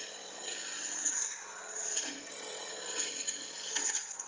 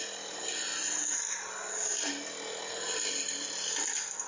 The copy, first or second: first